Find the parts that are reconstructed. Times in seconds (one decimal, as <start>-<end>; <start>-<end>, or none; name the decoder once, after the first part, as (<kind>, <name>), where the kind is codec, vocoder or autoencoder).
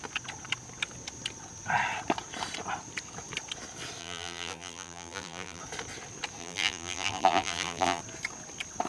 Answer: 4.0-5.6 (vocoder, BigVGAN v2); 6.4-8.0